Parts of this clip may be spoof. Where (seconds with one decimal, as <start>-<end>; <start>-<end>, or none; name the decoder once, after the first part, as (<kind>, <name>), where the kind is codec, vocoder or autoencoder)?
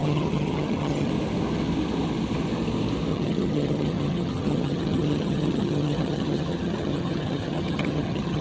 0.0-1.1 (vocoder, HiFi-GAN); 3.1-8.4